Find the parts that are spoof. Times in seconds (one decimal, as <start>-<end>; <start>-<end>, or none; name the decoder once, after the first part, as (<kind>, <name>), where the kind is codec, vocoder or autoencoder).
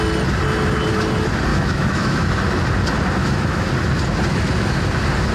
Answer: 1.5-2.3 (autoencoder, DAC-VAE); 3.2-3.7